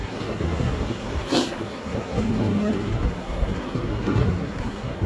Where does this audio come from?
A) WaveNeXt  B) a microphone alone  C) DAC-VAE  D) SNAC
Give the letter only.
D